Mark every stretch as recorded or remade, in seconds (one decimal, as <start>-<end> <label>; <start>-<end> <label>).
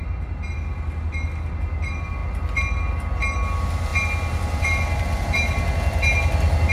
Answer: 0.0-6.7 recorded